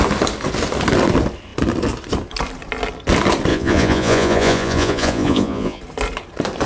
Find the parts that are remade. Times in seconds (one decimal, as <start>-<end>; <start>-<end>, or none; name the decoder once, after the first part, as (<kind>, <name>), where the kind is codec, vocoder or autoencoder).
3.5-5.8 (vocoder, Vocos)